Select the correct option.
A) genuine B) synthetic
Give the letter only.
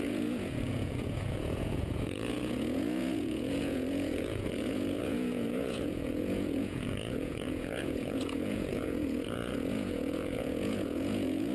B